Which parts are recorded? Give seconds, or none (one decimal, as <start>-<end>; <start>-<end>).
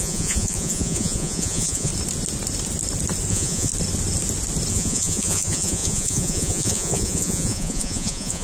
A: 1.9-3.3; 3.7-4.7